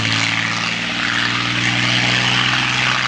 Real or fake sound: real